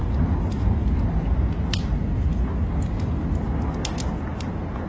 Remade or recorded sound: recorded